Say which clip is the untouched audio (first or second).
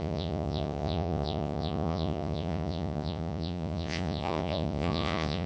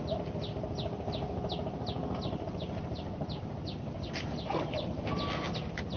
second